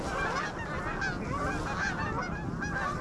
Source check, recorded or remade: recorded